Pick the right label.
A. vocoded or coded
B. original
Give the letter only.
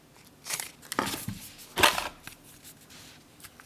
B